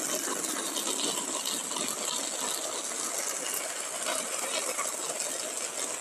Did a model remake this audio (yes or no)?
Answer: no